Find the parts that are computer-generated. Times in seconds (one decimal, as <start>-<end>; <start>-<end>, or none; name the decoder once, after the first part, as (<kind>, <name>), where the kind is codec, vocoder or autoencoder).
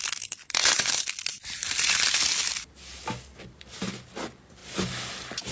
1.3-2.4 (vocoder, BigVGAN v2); 4.6-5.5